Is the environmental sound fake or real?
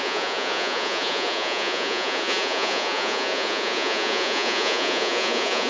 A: fake